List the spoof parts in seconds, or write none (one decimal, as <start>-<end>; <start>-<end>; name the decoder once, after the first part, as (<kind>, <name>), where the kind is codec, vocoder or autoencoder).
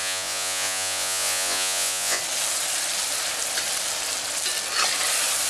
0.0-2.2 (vocoder, Vocos)